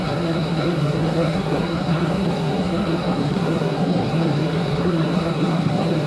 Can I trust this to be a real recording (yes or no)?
no